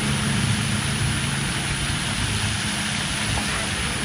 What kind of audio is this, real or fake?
real